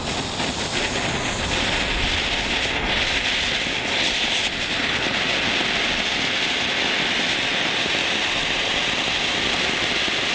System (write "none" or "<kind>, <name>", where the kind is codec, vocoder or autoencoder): none